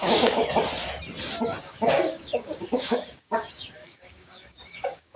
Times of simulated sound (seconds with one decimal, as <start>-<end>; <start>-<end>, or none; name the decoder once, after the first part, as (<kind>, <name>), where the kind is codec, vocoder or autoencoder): 0.0-0.4 (codec, DAC); 1.6-5.2